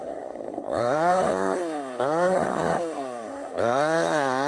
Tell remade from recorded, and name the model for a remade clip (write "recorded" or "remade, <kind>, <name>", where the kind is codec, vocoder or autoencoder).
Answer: remade, codec, SNAC